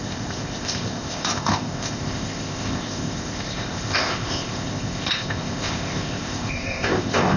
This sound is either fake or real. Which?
fake